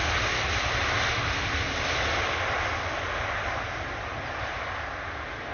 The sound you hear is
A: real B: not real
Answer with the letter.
A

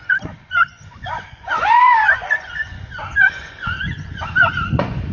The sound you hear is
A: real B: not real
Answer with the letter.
B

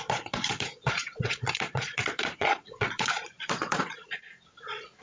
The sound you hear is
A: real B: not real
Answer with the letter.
B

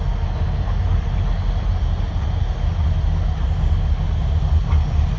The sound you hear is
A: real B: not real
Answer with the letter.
A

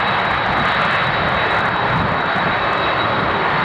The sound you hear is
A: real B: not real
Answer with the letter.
A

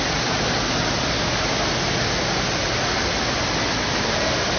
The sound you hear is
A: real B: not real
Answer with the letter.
A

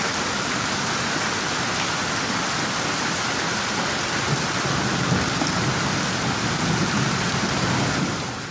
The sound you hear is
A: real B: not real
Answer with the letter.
A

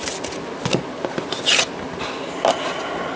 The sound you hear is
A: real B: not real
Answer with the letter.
A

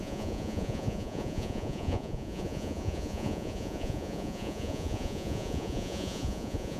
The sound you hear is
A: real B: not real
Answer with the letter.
B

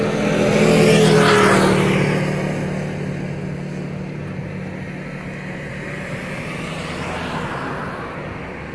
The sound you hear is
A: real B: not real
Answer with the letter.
A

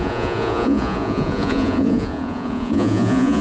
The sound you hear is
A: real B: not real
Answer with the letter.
B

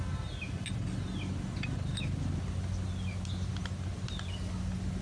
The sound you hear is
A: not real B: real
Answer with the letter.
B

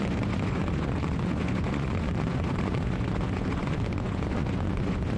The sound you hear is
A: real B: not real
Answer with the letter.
B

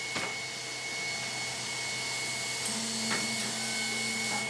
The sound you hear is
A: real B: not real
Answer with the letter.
A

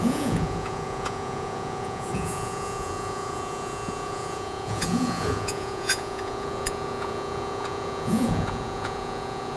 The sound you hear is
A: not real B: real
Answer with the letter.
A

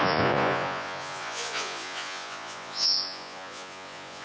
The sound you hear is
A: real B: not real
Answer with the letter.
B